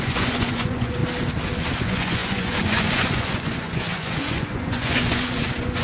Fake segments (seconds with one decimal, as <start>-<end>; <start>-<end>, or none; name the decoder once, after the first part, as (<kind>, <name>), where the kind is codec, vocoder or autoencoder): 0.0-1.0 (vocoder, Vocos); 1.8-5.8